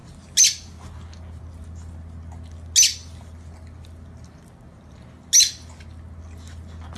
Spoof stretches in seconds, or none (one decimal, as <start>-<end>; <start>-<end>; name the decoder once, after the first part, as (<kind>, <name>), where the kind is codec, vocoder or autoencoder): none